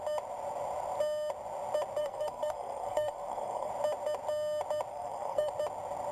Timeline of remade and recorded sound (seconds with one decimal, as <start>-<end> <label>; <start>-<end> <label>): 0.0-2.0 recorded; 2.0-3.7 remade; 3.7-4.9 recorded; 4.9-5.5 remade; 5.5-6.1 recorded